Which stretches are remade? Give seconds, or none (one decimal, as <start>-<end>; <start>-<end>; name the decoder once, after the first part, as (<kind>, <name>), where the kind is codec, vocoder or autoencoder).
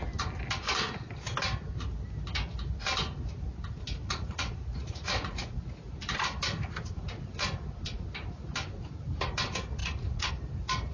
4.0-5.7 (vocoder, Vocos); 9.8-10.3